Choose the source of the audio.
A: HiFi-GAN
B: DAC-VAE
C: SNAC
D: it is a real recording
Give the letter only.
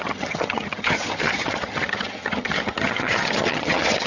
A